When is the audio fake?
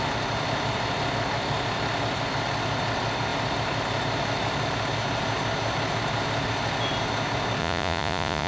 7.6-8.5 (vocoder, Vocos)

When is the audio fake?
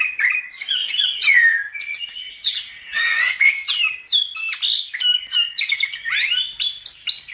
0.8-3.8 (vocoder, Vocos)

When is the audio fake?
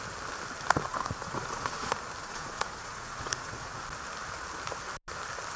0.9-1.8 (vocoder, Vocos); 2.2-3.8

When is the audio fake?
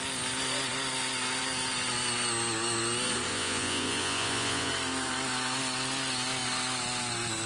3.3-4.7 (vocoder, Vocos)